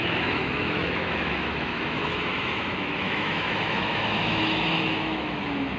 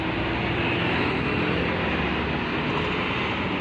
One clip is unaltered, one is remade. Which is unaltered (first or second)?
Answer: second